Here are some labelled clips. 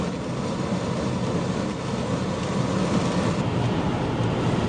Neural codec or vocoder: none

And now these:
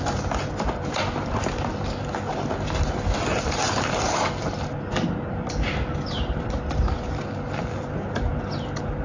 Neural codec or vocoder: none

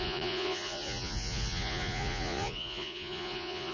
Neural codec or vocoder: vocoder, Vocos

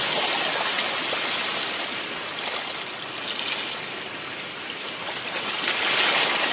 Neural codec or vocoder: none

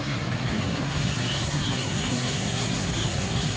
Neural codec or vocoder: codec, SNAC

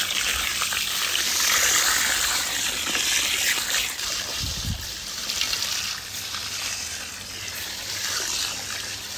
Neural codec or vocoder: none